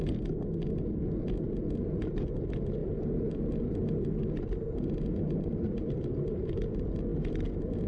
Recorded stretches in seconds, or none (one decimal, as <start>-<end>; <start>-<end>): 0.0-7.9